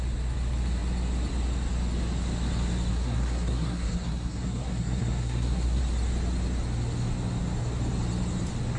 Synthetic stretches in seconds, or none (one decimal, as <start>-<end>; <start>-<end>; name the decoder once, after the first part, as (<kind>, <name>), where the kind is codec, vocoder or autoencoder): 2.9-5.8 (codec, SNAC)